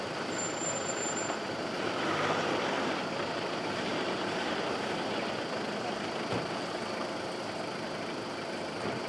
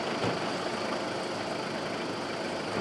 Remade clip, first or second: first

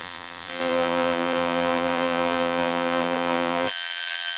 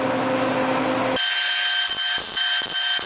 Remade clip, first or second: first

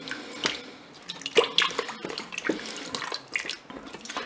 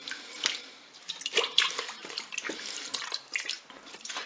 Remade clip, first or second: second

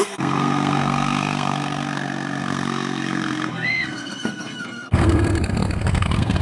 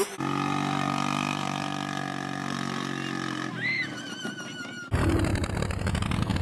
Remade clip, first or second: first